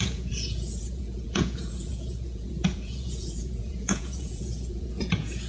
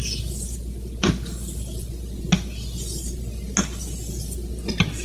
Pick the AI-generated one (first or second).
first